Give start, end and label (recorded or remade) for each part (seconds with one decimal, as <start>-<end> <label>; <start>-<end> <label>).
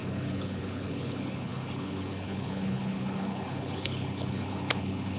0.0-5.2 remade